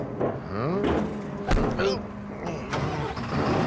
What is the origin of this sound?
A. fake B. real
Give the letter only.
B